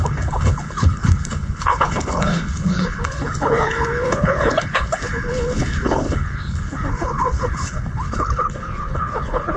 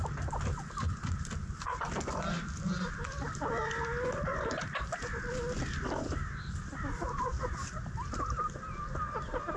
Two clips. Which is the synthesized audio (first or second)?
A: first